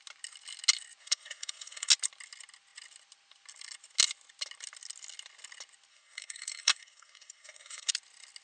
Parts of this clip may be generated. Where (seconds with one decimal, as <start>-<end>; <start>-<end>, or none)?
1.0-1.9; 5.9-7.9